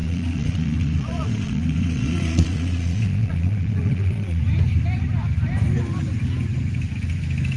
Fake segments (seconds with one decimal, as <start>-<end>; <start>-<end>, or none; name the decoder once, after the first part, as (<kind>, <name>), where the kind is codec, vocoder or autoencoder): 0.0-4.4 (vocoder, Vocos)